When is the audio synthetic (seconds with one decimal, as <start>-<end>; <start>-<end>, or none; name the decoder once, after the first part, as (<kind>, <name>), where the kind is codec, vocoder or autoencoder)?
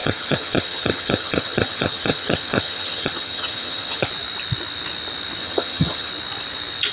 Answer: 0.0-4.1 (vocoder, HiFi-GAN); 5.4-6.1